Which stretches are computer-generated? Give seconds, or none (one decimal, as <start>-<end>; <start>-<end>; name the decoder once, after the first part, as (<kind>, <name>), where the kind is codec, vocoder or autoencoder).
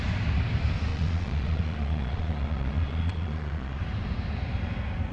0.9-3.8 (vocoder, Vocos)